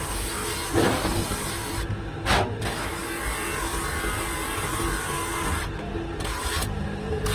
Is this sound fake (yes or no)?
no